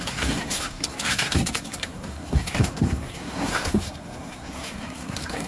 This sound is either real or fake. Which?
fake